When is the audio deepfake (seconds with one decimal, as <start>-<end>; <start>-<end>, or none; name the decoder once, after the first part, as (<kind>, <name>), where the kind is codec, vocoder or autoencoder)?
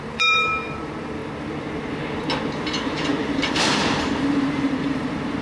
0.0-1.2 (vocoder, BigVGAN v2); 2.5-5.4